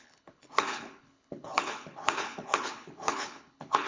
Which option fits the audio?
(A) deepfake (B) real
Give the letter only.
A